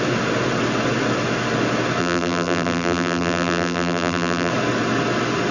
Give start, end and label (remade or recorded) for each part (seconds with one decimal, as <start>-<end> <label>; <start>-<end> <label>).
0.0-2.0 recorded; 2.0-4.5 remade; 4.5-5.5 recorded